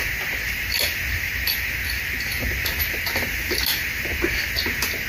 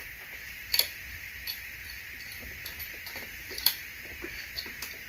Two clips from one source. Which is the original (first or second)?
first